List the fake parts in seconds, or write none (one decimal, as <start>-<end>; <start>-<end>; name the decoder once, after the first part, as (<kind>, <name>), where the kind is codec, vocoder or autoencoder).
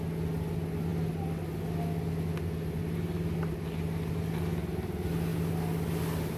none